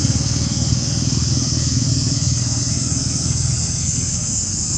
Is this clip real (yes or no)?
no